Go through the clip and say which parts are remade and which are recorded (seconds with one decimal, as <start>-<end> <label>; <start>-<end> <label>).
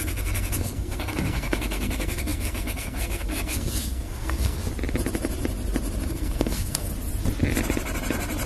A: 0.0-4.6 remade; 4.6-6.1 recorded; 6.1-6.9 remade; 6.9-8.5 recorded